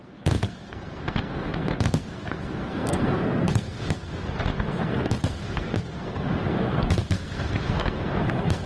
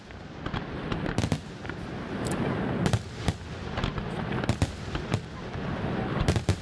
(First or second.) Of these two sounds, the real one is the second